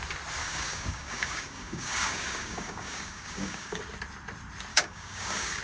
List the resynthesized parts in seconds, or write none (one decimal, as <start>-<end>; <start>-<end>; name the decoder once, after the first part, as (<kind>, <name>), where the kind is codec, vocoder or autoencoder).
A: 0.4-3.8 (codec, DAC); 4.7-5.6